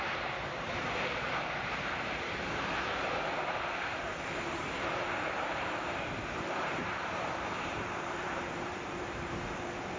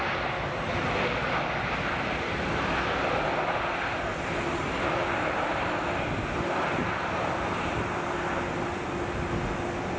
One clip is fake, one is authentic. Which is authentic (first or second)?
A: second